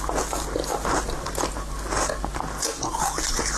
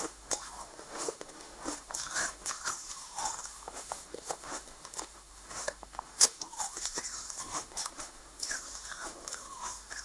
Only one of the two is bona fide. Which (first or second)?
first